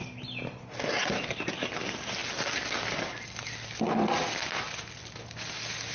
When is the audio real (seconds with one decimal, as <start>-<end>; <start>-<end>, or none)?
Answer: 0.0-5.9